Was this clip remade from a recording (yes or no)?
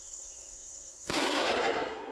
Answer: yes